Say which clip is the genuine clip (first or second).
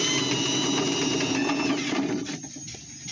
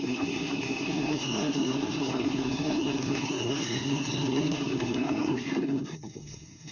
first